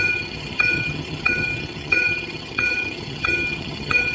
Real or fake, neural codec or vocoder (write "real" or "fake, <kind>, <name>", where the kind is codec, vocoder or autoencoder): fake, vocoder, HiFi-GAN